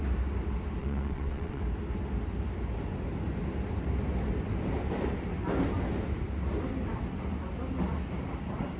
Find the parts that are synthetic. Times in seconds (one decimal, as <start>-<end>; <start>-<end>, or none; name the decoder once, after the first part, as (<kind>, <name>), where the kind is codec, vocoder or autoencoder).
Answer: 0.8-1.6 (vocoder, WaveNeXt)